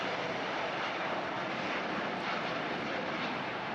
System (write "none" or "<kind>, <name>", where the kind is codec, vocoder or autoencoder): vocoder, BigVGAN v2